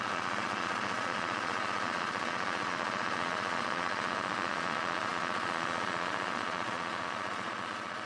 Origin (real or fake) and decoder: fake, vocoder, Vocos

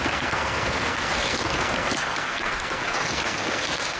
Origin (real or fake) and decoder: fake, codec, SNAC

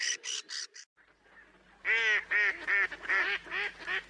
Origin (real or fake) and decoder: real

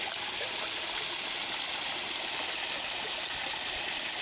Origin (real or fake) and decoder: real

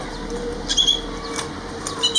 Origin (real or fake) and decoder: real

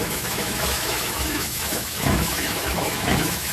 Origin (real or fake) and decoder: fake, autoencoder, DAC-VAE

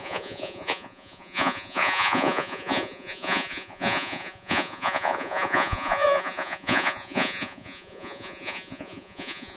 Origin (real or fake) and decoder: fake, vocoder, Vocos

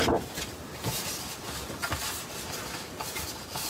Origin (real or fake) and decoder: real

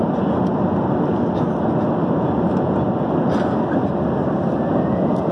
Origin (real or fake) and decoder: real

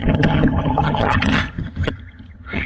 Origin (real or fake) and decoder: fake, vocoder, HiFi-GAN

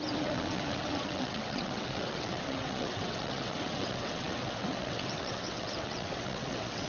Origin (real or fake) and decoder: fake, vocoder, WaveNeXt